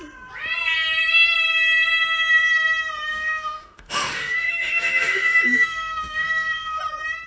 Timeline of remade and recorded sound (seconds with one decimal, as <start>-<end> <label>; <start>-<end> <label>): 0.0-3.1 recorded; 3.1-6.8 remade; 6.8-7.3 recorded